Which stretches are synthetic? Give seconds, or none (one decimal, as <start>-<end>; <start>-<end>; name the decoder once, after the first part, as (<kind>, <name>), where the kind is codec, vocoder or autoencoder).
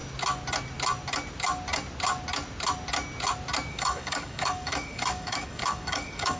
3.7-6.4 (codec, DAC)